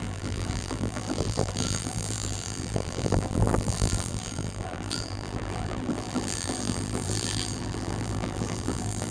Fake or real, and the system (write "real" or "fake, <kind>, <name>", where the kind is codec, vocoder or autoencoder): fake, vocoder, BigVGAN v2